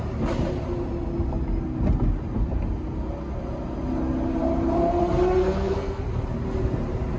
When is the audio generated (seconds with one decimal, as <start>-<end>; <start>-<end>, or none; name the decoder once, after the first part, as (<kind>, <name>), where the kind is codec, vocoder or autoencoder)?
5.4-6.0 (codec, SNAC)